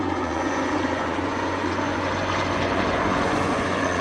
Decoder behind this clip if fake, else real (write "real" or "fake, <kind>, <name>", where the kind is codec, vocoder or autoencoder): fake, vocoder, Vocos